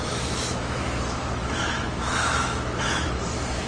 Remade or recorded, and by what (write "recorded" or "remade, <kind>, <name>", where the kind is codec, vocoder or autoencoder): remade, autoencoder, DAC-VAE